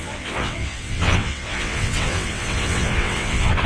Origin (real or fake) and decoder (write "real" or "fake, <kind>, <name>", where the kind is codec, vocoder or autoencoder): fake, vocoder, WaveNeXt